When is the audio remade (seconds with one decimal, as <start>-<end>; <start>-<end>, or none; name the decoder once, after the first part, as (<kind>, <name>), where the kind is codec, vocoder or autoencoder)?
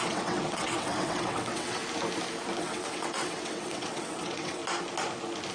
0.0-1.8 (vocoder, WaveNeXt); 2.6-4.6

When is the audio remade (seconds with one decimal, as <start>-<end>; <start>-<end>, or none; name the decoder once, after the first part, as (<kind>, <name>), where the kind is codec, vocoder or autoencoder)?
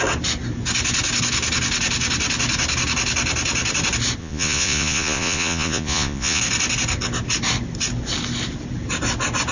4.2-6.4 (vocoder, Vocos)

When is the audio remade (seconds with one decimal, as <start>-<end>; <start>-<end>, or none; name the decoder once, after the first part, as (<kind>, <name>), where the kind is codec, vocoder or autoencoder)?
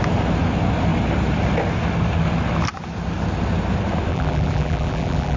4.1-5.4 (vocoder, BigVGAN v2)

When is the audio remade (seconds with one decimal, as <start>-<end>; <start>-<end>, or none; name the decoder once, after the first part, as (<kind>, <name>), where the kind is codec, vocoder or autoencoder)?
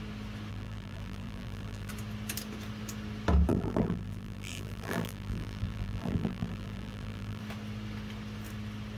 0.5-1.9 (vocoder, BigVGAN v2); 3.5-7.4